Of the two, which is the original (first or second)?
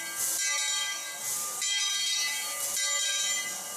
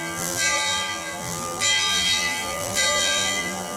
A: first